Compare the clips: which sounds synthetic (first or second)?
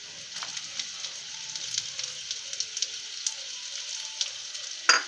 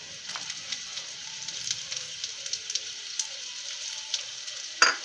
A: second